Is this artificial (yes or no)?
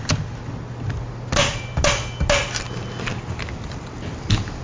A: no